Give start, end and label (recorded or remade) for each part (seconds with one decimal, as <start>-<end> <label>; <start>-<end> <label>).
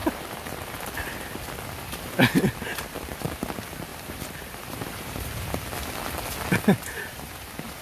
0.0-0.9 remade; 0.9-2.7 recorded; 2.7-3.2 remade; 3.2-3.9 recorded; 3.9-5.5 remade; 5.5-7.8 recorded